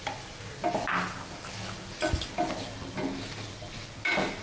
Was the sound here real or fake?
real